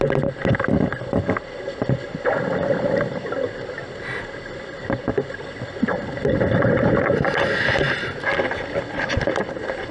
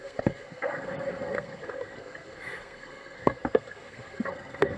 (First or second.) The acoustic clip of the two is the first